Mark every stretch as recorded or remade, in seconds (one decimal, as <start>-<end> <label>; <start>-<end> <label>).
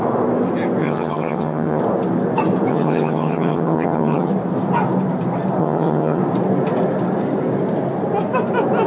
0.0-0.8 recorded; 0.8-1.8 remade; 1.8-2.7 recorded; 2.7-4.3 remade; 4.3-5.6 recorded; 5.6-6.2 remade; 6.2-8.9 recorded